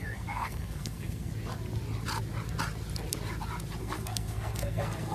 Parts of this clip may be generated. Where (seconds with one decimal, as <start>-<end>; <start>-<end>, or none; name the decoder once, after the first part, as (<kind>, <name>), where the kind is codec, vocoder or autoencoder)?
0.0-1.3 (codec, SNAC); 3.8-5.1